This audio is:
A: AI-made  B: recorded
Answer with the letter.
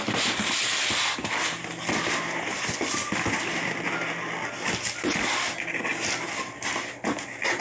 B